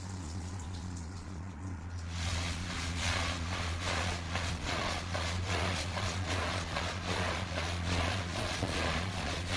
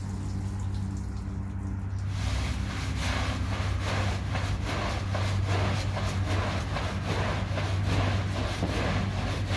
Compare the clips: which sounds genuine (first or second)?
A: second